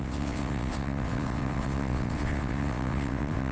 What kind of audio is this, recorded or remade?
remade